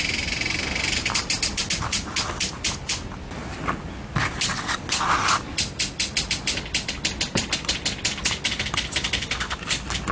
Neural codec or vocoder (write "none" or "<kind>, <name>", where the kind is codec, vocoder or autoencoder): none